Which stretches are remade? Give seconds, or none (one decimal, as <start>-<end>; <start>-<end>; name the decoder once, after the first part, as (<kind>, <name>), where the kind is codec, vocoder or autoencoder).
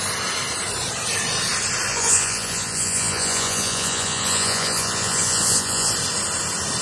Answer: 1.9-5.9 (vocoder, Vocos)